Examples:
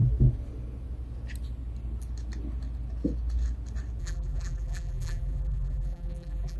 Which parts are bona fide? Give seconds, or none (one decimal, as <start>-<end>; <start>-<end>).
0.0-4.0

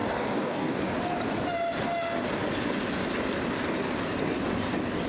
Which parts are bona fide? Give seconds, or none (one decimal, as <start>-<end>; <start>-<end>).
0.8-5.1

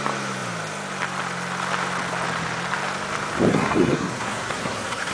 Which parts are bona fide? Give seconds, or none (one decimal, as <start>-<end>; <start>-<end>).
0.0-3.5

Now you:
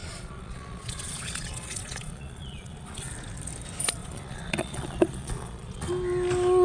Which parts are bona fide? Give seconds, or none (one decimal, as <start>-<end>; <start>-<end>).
3.1-4.0; 5.9-6.6

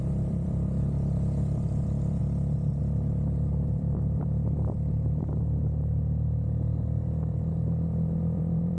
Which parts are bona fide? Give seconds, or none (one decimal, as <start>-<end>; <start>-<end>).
2.2-2.8

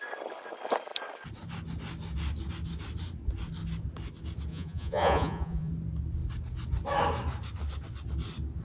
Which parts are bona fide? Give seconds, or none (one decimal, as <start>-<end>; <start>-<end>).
0.0-4.5; 5.7-8.6

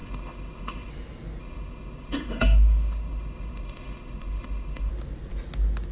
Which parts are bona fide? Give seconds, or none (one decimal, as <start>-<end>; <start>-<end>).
0.9-1.4; 4.9-5.9